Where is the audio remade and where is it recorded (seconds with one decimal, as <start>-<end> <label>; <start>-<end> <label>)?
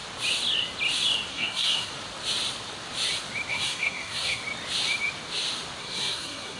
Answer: 0.0-1.3 recorded; 1.3-1.9 remade; 1.9-3.5 recorded; 3.5-4.4 remade; 4.4-5.8 recorded; 5.8-6.6 remade